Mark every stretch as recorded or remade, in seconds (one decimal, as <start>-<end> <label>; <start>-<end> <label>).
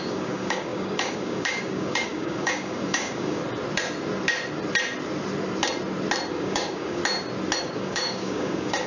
0.0-3.4 remade; 3.4-6.3 recorded; 6.3-7.0 remade; 7.0-7.6 recorded; 7.6-8.9 remade